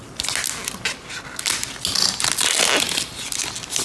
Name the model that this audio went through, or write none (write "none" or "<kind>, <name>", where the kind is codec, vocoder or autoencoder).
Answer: none